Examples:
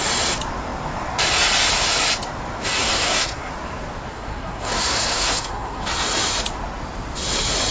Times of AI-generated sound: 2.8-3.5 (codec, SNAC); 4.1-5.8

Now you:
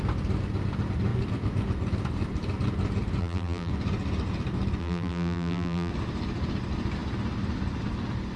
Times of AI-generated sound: 3.2-3.7 (vocoder, BigVGAN v2); 4.8-5.9

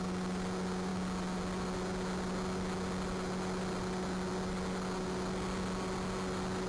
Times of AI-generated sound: none

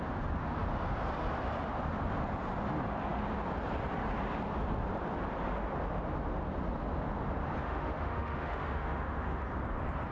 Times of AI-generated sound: 7.6-9.4 (autoencoder, DAC-VAE)

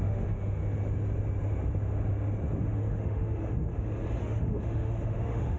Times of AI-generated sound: 0.0-0.6 (autoencoder, DAC-VAE); 2.6-3.7; 4.2-5.6

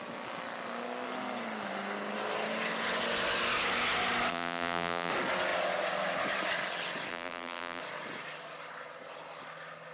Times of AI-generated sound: 4.3-5.1 (vocoder, BigVGAN v2); 7.1-7.8

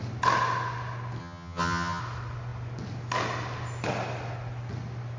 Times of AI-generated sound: 1.2-2.0 (vocoder, HiFi-GAN)